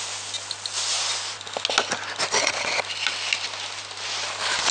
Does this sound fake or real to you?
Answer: real